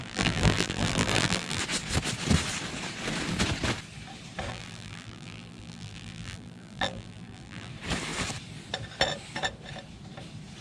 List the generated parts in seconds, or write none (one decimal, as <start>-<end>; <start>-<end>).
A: 0.0-1.6; 4.5-7.7